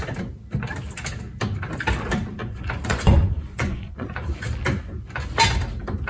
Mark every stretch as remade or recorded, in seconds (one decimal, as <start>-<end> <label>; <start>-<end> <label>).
0.0-2.4 recorded; 2.4-4.5 remade; 4.5-6.1 recorded